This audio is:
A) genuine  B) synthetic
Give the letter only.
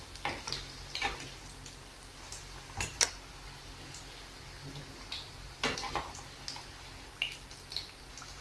A